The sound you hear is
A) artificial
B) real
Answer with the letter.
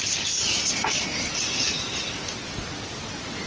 B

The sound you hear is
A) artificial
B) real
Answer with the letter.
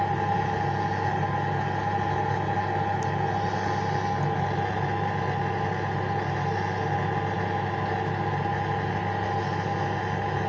B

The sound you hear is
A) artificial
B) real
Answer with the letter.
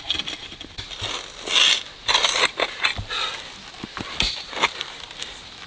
B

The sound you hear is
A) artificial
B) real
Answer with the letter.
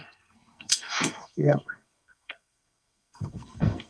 A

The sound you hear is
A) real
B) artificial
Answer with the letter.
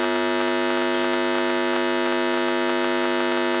A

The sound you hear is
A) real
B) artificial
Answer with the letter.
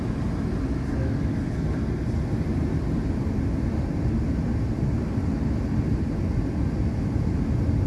A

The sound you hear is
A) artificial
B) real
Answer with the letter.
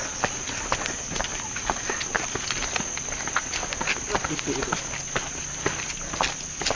B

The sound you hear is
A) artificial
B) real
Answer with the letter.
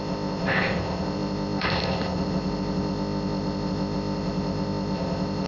A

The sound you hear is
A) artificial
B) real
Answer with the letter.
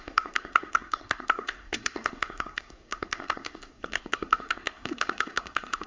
A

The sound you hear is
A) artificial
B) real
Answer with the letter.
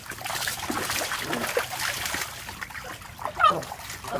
B